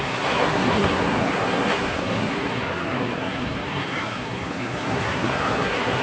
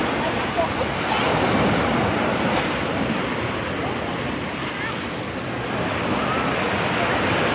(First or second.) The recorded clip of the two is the second